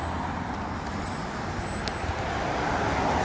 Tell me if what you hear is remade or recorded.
recorded